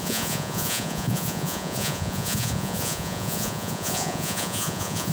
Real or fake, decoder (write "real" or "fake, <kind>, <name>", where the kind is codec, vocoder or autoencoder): fake, vocoder, Vocos